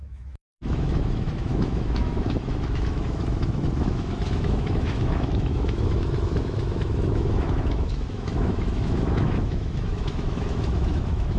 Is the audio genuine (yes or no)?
no